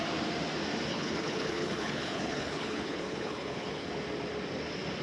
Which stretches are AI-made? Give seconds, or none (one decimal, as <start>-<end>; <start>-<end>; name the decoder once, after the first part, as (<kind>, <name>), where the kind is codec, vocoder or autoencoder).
0.9-3.9 (codec, HILCodec)

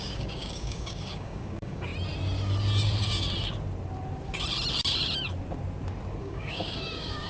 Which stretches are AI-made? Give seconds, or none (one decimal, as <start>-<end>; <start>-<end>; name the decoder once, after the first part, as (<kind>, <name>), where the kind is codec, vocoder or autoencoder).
0.0-1.9 (codec, DAC); 6.2-7.3